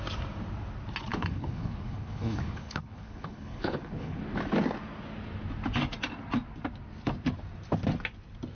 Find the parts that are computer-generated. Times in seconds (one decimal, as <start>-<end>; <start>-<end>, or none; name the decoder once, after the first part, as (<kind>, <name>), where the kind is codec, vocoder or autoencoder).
1.1-4.2 (codec, HILCodec)